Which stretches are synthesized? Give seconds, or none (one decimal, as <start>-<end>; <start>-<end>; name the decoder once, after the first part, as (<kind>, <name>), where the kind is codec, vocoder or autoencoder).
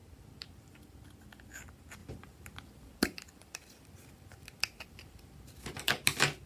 none